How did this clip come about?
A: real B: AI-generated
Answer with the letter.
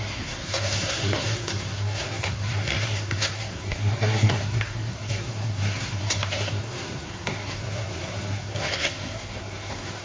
B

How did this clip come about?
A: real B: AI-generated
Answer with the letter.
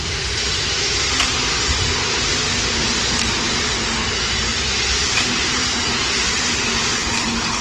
A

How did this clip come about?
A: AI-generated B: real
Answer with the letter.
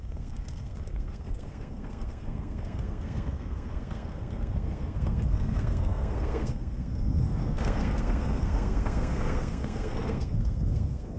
A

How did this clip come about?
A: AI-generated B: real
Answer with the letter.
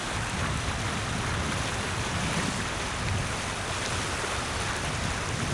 B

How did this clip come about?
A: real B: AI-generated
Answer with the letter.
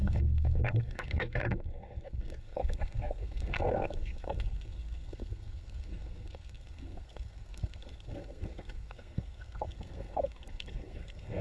B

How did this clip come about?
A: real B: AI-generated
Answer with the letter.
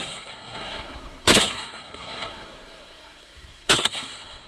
B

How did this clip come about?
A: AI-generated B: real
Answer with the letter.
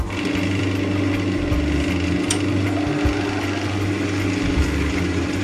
B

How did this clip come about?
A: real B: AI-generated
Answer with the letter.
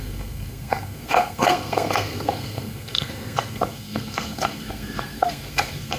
B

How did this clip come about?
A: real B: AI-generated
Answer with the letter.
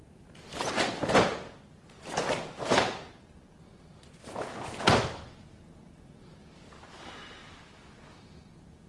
A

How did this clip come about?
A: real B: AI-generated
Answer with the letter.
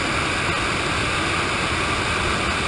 A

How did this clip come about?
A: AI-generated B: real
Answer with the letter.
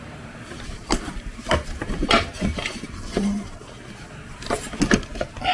B